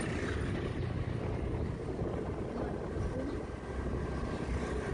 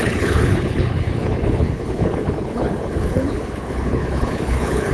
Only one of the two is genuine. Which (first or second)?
first